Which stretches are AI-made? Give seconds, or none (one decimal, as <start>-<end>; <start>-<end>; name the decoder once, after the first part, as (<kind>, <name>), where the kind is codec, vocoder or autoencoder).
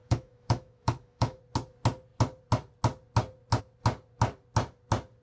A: 0.0-1.4 (autoencoder, DAC-VAE)